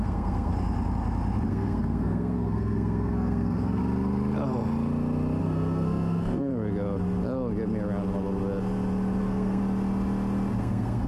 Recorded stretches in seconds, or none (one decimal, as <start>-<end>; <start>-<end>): 0.5-1.5; 3.8-5.4; 6.5-9.2; 9.6-10.6